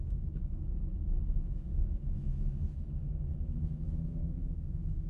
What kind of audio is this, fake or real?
fake